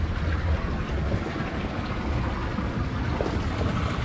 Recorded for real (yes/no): yes